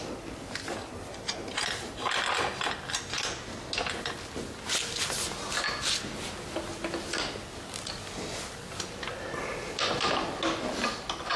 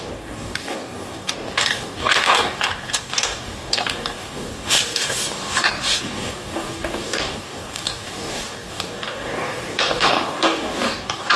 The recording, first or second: first